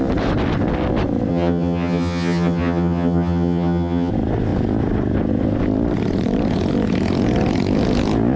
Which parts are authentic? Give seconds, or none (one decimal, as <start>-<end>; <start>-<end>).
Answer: 0.0-1.3; 4.1-8.4